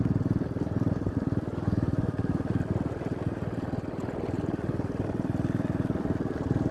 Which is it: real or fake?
real